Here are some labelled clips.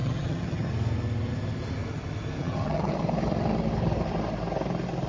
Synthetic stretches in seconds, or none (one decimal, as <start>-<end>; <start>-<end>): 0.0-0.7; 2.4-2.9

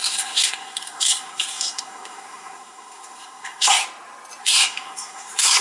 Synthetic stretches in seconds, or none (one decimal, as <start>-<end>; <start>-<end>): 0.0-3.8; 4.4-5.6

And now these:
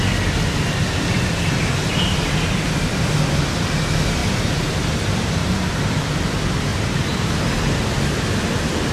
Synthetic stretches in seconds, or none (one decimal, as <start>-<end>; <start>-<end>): 5.4-6.0; 6.7-7.4

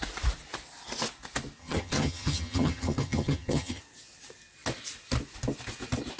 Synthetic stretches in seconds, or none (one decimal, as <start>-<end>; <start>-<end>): 1.6-3.8